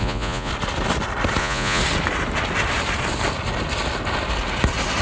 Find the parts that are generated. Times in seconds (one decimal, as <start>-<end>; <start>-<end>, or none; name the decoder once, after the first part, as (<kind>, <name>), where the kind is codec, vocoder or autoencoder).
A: 0.0-0.5 (vocoder, Vocos); 1.4-1.8